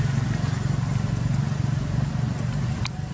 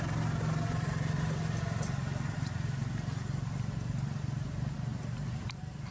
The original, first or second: first